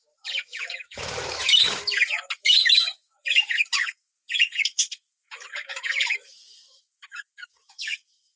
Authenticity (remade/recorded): remade